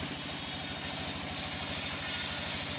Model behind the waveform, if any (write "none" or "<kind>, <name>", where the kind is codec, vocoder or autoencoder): none